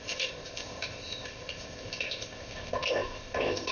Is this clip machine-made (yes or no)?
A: yes